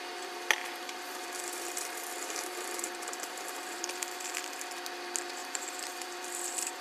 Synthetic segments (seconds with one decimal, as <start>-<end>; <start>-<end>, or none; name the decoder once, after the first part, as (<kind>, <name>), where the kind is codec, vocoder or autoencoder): 0.6-4.6 (vocoder, BigVGAN v2); 5.4-6.8